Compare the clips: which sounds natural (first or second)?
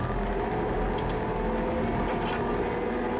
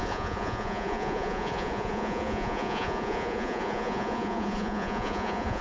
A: first